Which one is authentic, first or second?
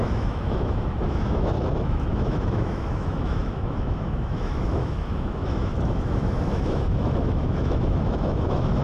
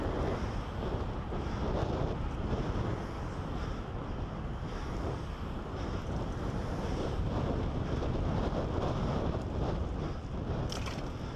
second